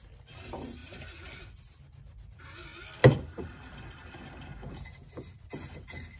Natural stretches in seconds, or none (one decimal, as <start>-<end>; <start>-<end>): 0.0-6.2